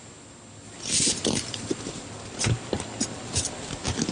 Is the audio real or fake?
real